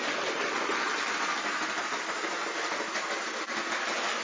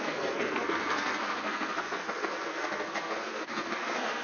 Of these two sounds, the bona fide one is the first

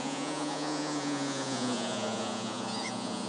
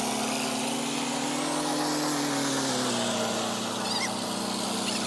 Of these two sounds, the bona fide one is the second